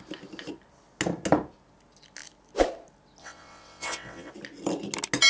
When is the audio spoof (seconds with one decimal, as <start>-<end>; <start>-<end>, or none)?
3.2-4.3

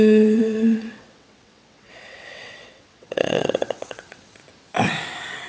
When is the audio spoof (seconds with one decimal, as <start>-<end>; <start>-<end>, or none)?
0.0-4.4

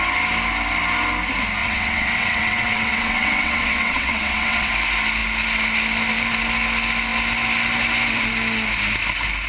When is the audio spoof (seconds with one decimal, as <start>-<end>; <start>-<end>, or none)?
1.6-4.7

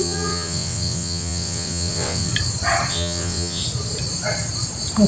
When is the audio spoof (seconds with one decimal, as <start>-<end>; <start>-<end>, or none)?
0.0-2.3; 2.9-3.6

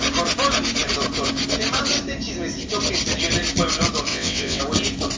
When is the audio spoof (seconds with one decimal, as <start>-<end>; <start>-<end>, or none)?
4.1-4.6

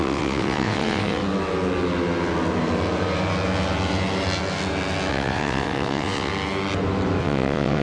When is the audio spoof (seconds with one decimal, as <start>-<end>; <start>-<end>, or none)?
0.0-1.2; 5.1-6.3; 7.2-7.8